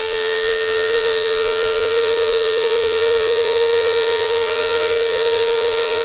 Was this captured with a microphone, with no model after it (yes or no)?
no